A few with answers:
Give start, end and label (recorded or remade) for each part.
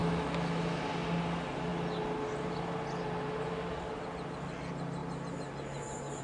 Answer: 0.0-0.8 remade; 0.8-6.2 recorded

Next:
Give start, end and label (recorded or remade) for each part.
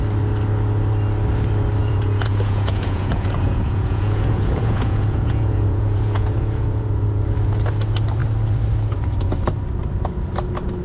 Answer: 0.0-1.8 recorded; 1.8-6.9 remade; 6.9-10.8 recorded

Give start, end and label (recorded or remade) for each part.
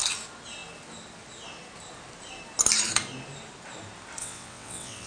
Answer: 0.0-4.2 recorded; 4.2-5.1 remade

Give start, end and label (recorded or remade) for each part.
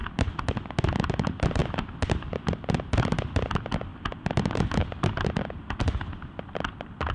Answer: 0.0-1.1 recorded; 1.1-1.6 remade; 1.6-2.2 recorded; 2.2-3.9 remade; 3.9-4.4 recorded; 4.4-7.1 remade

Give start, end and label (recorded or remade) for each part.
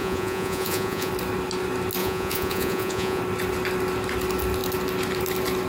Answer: 0.0-1.1 remade; 1.1-2.0 recorded; 2.0-3.2 remade; 3.2-5.7 recorded